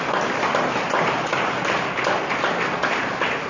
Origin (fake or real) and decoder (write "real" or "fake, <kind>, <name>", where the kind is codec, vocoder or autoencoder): real